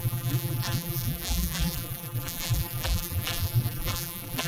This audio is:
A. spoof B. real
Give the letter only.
A